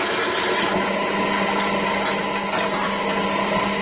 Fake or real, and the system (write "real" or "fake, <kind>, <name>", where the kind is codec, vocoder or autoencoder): real